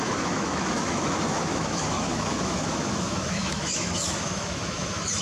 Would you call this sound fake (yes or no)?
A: yes